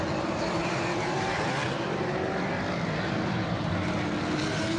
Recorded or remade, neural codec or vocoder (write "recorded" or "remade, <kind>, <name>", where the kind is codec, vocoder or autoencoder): remade, vocoder, BigVGAN v2